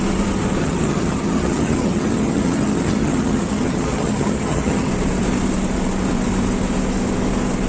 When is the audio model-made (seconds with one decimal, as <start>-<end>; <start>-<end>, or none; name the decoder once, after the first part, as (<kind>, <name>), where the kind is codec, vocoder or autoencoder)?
0.6-4.9 (vocoder, HiFi-GAN)